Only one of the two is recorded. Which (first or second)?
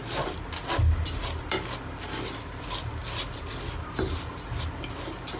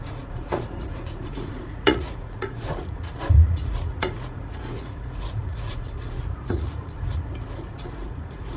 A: first